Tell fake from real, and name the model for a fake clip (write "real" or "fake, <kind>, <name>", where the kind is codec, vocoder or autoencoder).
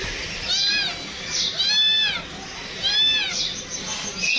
real